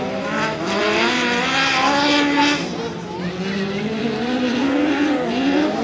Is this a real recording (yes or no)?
yes